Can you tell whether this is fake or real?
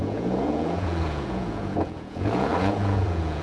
fake